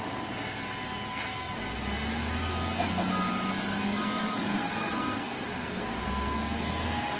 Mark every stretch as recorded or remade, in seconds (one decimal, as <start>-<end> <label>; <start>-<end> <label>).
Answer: 0.0-1.1 recorded; 1.1-1.6 remade; 1.6-3.8 recorded; 3.8-7.2 remade